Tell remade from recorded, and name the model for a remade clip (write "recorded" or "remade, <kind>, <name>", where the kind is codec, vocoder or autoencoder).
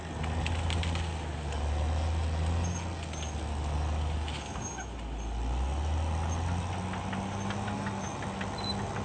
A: recorded